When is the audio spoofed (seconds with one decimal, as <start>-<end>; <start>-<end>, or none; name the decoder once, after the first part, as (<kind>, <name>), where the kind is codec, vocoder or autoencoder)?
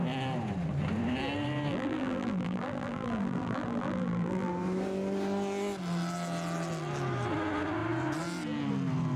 1.7-4.5 (vocoder, BigVGAN v2)